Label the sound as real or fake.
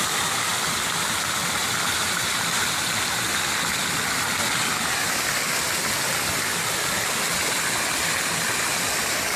real